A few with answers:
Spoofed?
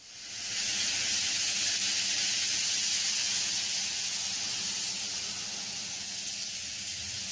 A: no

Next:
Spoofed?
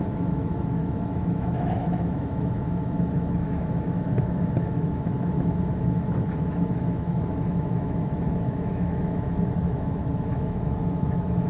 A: yes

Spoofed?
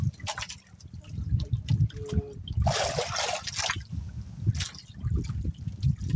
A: no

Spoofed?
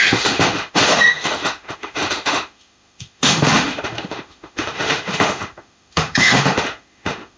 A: yes